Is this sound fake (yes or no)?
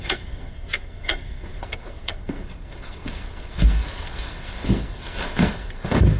yes